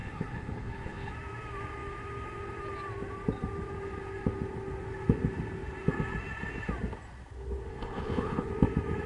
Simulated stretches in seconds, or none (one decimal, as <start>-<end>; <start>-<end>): 0.0-1.1; 7.7-8.5